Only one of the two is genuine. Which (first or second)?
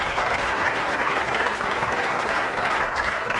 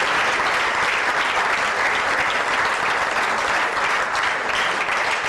second